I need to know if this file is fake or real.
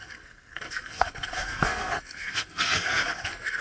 fake